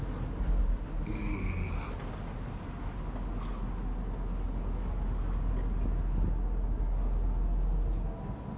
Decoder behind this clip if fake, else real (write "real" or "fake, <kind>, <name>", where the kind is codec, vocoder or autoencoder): real